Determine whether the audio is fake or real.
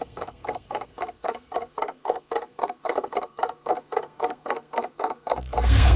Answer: fake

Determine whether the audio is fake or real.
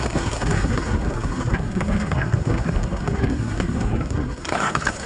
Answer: fake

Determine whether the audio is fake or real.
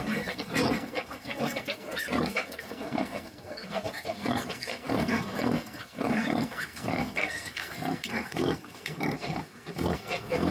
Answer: fake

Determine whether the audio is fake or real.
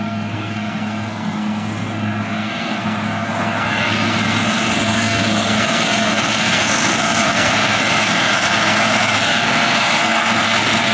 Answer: fake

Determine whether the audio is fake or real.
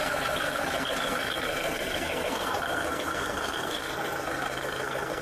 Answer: fake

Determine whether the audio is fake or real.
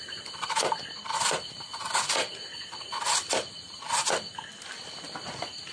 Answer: real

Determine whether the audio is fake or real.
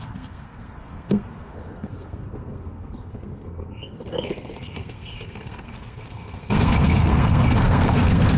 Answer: fake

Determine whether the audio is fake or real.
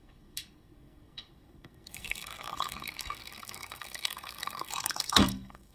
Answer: fake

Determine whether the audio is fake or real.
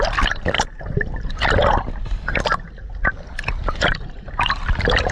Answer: real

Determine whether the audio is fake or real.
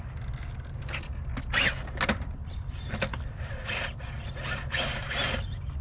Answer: real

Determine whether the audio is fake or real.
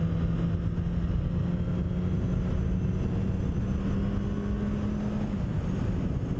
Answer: real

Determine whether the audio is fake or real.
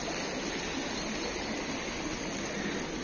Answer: real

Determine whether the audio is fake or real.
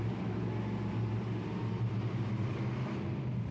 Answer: real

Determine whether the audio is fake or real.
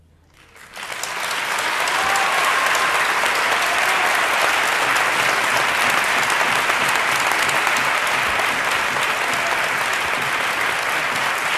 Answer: real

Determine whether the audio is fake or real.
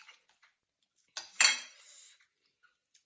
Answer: real